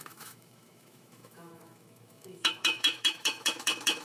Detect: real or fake fake